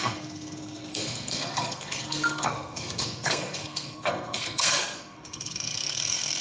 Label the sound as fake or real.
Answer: fake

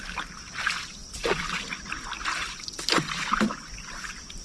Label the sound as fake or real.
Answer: real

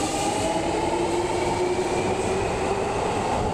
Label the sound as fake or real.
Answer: real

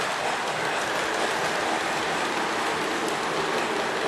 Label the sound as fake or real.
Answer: real